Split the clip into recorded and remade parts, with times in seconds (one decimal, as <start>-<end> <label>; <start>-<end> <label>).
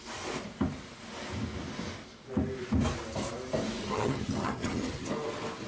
0.0-3.8 recorded; 3.8-5.1 remade; 5.1-5.7 recorded